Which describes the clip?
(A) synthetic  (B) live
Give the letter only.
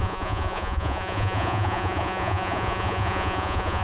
A